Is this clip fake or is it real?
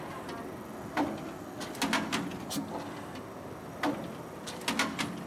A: real